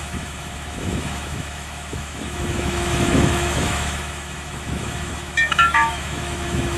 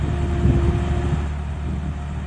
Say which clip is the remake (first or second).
first